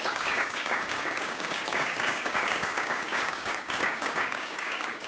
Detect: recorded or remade remade